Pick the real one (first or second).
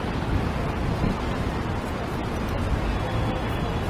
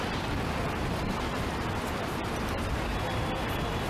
first